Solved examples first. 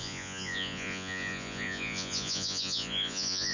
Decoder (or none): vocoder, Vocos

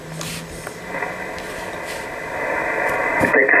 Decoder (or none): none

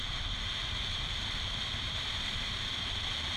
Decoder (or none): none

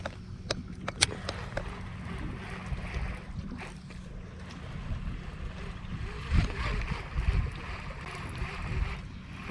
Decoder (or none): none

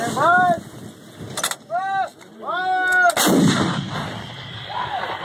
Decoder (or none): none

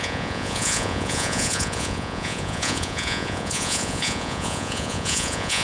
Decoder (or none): vocoder, Vocos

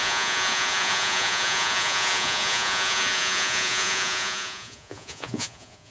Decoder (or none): vocoder, Vocos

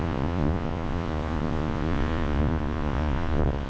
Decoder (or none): vocoder, Vocos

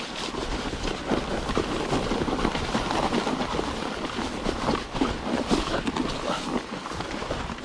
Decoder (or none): none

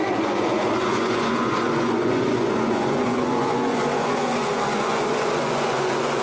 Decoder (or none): vocoder, Vocos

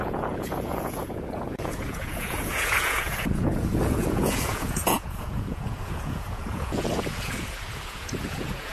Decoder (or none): vocoder, Vocos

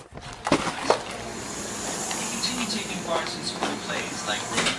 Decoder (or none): none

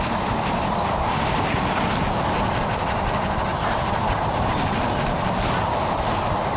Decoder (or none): none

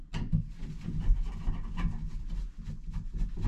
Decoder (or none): none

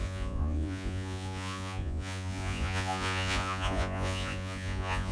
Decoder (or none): vocoder, Vocos